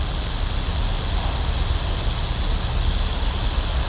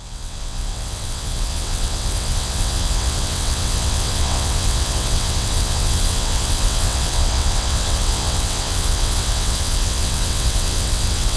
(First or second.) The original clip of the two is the first